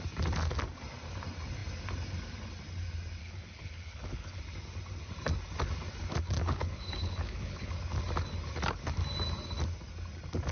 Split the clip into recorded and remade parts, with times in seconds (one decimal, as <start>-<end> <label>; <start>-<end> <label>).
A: 0.0-3.2 recorded; 3.2-4.4 remade; 4.4-6.4 recorded; 6.4-7.7 remade; 7.7-10.5 recorded